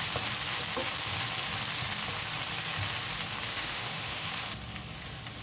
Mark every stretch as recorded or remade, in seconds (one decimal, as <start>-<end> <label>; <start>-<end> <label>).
0.0-3.5 recorded; 3.5-4.3 remade; 4.3-5.4 recorded